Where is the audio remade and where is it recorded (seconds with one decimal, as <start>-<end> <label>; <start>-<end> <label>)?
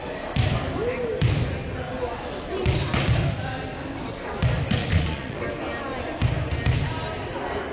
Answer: 0.0-4.8 recorded; 4.8-5.4 remade; 5.4-7.7 recorded